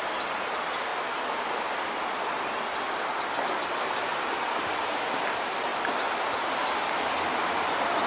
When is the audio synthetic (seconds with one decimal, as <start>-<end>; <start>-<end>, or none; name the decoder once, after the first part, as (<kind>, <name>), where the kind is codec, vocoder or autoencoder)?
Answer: none

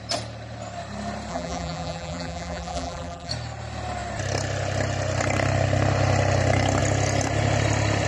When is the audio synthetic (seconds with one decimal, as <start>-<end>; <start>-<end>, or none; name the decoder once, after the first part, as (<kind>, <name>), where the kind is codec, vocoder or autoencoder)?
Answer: 1.3-3.3 (vocoder, BigVGAN v2)

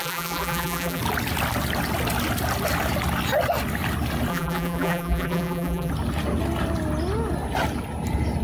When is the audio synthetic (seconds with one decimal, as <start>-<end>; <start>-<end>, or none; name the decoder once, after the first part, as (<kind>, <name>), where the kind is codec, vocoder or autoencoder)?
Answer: 0.0-1.0 (vocoder, BigVGAN v2); 4.3-5.9